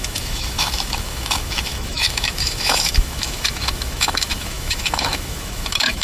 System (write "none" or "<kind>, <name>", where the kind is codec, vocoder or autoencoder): autoencoder, DAC-VAE